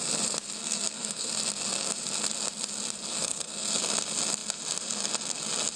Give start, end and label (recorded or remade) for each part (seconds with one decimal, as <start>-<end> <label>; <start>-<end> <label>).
0.0-0.6 recorded; 0.6-1.3 remade; 1.3-3.1 recorded; 3.1-3.8 remade; 3.8-5.8 recorded